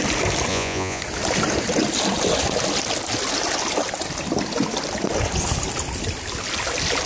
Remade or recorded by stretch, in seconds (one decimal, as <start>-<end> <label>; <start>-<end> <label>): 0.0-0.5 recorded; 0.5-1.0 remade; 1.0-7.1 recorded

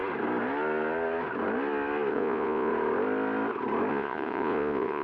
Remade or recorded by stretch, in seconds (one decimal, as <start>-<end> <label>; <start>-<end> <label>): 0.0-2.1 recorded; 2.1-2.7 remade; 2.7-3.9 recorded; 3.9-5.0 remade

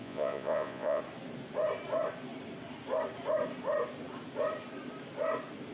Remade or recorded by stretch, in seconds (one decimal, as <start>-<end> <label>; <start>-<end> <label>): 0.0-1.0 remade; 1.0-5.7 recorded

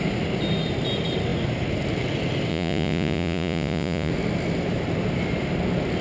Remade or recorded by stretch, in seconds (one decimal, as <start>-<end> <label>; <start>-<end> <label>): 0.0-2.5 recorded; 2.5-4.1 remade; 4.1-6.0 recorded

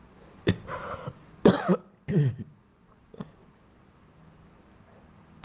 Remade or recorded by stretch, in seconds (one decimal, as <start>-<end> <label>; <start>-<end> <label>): 0.0-2.7 recorded; 2.7-3.4 remade; 3.4-5.4 recorded

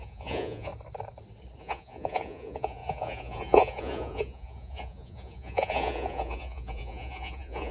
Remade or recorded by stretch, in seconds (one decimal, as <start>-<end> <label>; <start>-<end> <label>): 0.0-0.7 remade; 0.7-1.6 recorded; 1.6-7.7 remade